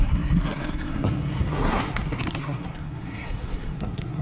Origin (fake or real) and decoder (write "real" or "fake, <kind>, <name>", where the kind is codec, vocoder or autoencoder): fake, codec, SNAC